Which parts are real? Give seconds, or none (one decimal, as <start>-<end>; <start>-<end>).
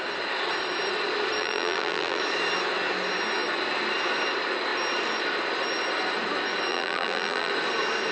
0.0-1.4; 2.2-6.7; 7.5-8.1